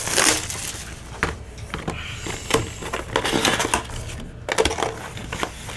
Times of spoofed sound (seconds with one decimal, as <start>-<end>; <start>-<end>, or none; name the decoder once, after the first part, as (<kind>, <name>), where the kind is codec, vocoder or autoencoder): none